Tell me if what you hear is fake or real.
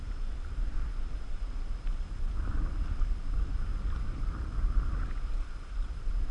real